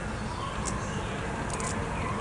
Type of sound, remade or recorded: recorded